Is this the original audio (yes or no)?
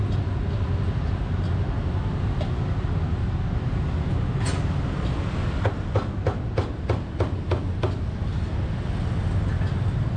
yes